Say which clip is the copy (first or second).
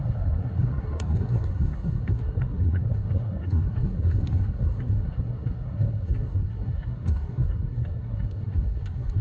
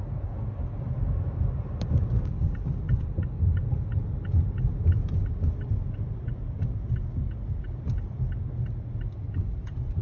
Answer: first